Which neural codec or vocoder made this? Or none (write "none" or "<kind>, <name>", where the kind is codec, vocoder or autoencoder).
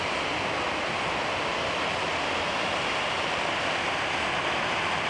none